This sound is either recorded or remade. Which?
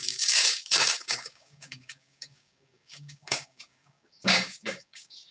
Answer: remade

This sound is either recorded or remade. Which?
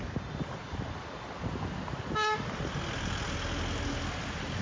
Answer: recorded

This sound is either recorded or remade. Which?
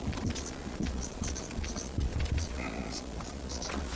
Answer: remade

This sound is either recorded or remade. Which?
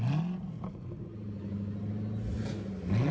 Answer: recorded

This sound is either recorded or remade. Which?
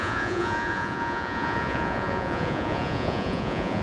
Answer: remade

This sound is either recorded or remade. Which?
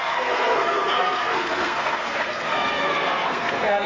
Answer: remade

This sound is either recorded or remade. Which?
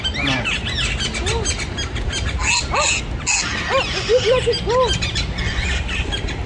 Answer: recorded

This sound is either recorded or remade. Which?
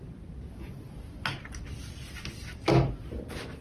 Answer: recorded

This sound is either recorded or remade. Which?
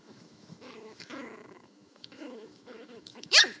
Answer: remade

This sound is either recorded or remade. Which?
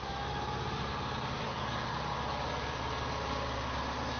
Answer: recorded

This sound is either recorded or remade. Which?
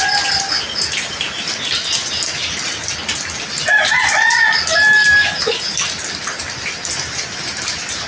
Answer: recorded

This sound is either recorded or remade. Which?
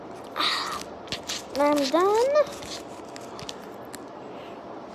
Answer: recorded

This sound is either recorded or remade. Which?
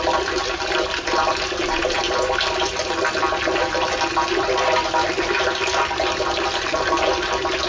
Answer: recorded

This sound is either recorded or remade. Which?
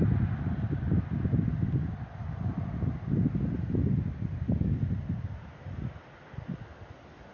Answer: recorded